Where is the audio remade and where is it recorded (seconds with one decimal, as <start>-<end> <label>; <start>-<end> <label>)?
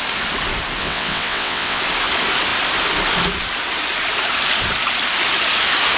0.0-0.8 recorded; 0.8-1.8 remade; 1.8-6.0 recorded